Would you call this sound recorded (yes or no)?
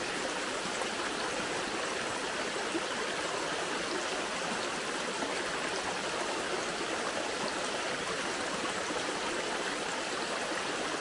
yes